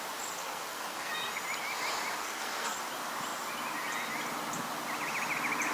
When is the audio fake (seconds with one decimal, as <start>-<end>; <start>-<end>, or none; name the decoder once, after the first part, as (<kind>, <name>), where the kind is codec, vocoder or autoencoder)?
0.4-1.1 (codec, SNAC); 2.2-2.8